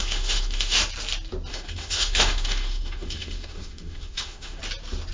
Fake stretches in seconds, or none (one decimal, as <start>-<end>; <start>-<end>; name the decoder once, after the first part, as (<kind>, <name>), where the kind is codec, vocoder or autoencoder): 0.0-0.8 (autoencoder, DAC-VAE); 1.5-4.6